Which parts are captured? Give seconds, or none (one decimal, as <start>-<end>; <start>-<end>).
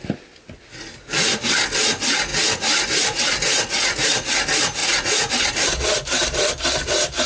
0.0-4.8; 5.3-7.3